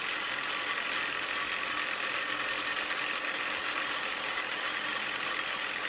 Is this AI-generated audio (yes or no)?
no